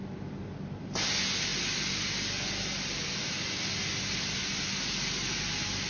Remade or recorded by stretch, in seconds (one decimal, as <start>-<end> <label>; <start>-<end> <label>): 0.0-5.9 recorded